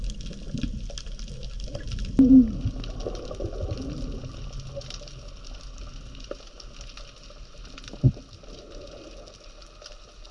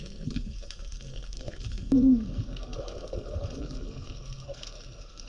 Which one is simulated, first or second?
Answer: second